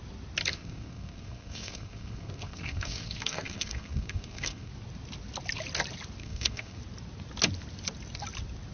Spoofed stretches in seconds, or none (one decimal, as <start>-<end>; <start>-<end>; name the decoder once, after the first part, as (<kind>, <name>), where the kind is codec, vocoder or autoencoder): 0.5-4.7 (codec, SNAC); 6.2-6.8